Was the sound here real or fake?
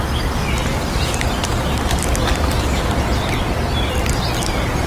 real